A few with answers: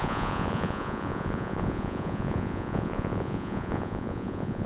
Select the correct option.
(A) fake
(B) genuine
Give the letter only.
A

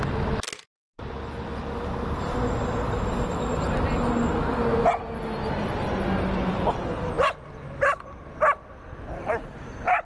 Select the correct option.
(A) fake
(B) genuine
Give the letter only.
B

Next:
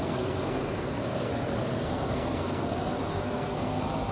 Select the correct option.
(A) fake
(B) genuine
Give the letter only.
A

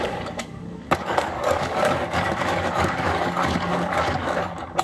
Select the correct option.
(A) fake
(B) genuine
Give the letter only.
A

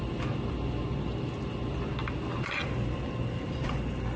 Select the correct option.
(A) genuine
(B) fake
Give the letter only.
A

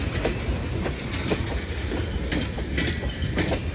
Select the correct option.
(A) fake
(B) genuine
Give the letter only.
B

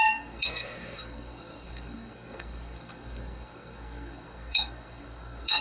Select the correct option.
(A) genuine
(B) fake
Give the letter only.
B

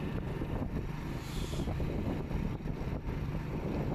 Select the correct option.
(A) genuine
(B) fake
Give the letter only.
A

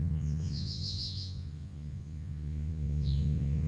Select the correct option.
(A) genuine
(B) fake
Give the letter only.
B